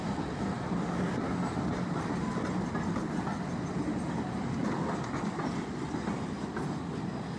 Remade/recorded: recorded